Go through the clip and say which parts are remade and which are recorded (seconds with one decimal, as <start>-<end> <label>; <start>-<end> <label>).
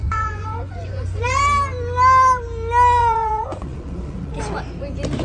0.0-1.4 remade; 1.4-3.0 recorded; 3.0-4.4 remade; 4.4-5.2 recorded